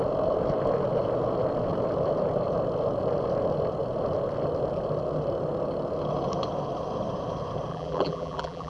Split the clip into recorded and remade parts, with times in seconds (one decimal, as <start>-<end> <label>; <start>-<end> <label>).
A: 0.0-7.7 recorded; 7.7-8.7 remade